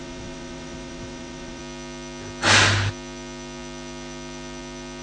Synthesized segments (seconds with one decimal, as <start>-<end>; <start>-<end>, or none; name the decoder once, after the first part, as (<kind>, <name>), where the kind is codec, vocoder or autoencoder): 0.0-1.6 (vocoder, WaveNeXt)